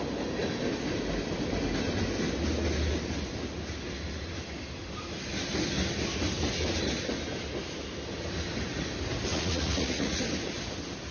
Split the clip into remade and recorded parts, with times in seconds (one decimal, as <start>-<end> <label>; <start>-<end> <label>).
0.0-9.3 recorded; 9.3-10.2 remade; 10.2-11.1 recorded